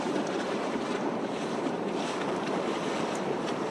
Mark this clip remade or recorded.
remade